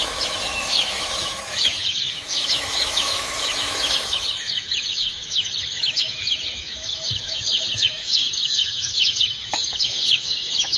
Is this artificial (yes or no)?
yes